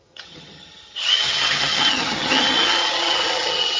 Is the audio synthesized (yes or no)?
yes